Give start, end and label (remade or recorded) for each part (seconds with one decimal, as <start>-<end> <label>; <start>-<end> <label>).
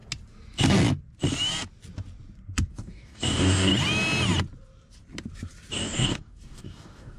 0.0-2.7 recorded; 2.7-3.7 remade; 3.7-5.7 recorded; 5.7-7.2 remade